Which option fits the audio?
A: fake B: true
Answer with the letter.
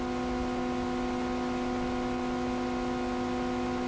B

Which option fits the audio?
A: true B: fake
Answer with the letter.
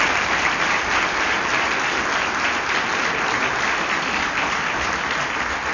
A